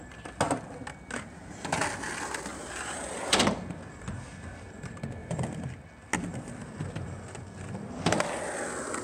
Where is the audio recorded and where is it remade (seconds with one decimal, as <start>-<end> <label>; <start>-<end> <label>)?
0.0-2.5 recorded; 2.5-3.4 remade; 3.4-5.2 recorded; 5.2-5.7 remade; 5.7-9.0 recorded

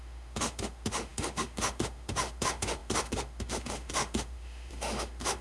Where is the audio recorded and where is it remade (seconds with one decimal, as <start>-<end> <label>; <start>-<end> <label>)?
0.0-5.4 remade

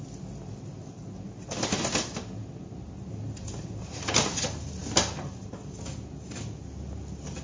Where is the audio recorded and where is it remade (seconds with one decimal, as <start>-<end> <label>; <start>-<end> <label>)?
0.0-7.4 recorded

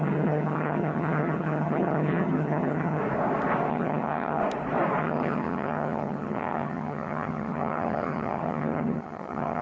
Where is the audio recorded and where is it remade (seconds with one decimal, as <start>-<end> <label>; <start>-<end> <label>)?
0.0-3.0 remade; 3.0-3.7 recorded; 3.7-4.4 remade; 4.4-5.0 recorded; 5.0-9.6 remade

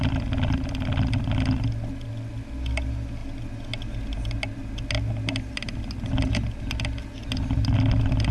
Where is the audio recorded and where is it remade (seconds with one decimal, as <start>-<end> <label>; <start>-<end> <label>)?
0.0-8.3 recorded

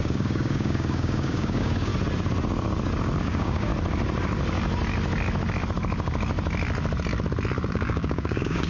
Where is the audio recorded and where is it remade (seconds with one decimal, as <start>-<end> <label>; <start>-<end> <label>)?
0.0-1.9 remade; 1.9-3.2 recorded; 3.2-3.7 remade; 3.7-7.7 recorded; 7.7-8.7 remade

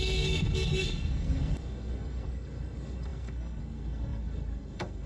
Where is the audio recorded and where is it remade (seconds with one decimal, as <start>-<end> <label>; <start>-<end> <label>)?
0.0-5.1 remade